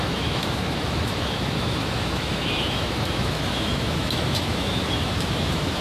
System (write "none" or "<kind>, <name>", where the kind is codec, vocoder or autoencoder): autoencoder, DAC-VAE